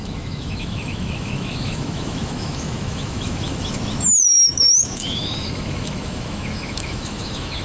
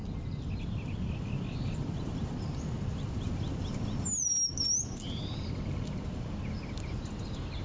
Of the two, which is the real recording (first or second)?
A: second